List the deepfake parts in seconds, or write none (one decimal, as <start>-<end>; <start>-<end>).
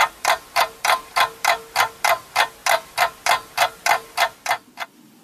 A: none